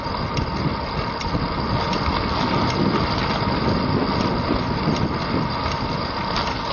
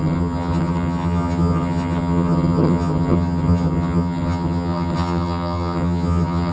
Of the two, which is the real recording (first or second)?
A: first